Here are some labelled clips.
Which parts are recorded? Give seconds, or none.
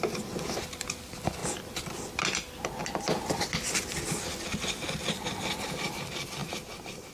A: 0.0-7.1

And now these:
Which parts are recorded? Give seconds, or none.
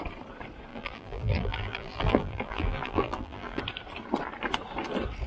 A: 0.0-0.7; 3.6-5.3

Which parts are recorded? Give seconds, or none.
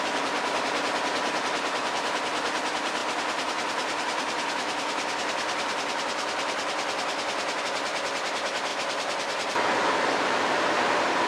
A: 0.0-3.0; 7.6-11.3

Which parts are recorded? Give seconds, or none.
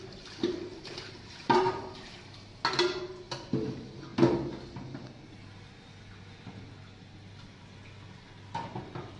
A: 0.0-0.7; 2.2-9.2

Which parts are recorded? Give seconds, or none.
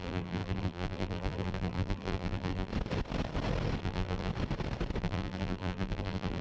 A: 2.7-3.8; 4.3-5.0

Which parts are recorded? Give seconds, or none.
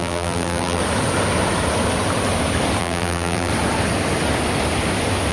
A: 0.8-2.8; 3.5-5.3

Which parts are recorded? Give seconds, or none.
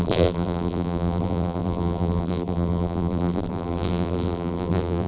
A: none